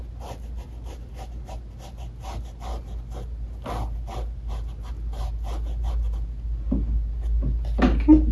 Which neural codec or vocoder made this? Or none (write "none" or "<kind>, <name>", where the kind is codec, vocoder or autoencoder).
none